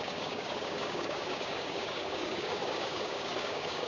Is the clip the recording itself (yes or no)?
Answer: no